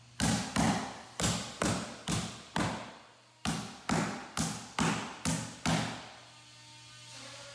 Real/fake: real